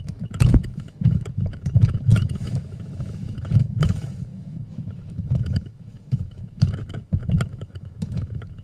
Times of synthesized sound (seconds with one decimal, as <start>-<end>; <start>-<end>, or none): 0.0-8.6